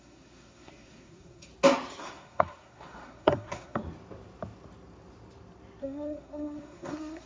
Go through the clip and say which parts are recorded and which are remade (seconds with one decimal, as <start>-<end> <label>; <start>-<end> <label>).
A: 0.0-1.5 remade; 1.5-2.0 recorded; 2.0-3.8 remade; 3.8-5.8 recorded; 5.8-7.3 remade